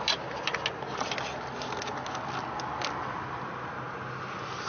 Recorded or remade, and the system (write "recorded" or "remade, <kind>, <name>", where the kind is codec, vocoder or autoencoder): recorded